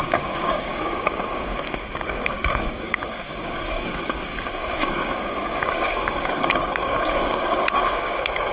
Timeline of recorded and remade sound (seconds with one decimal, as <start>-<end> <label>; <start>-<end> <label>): 0.0-8.5 remade